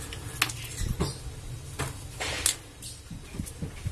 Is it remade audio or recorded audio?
recorded